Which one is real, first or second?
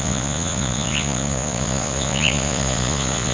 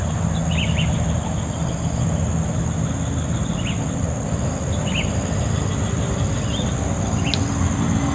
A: second